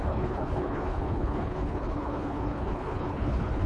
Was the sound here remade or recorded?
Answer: remade